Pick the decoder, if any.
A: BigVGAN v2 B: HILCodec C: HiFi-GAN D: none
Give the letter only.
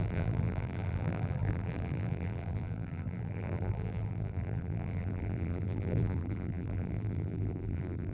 A